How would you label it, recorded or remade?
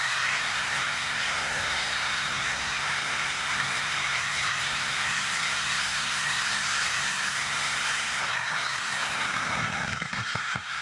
remade